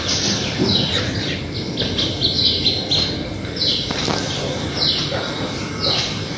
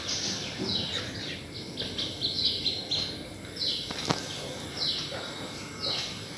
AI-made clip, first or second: first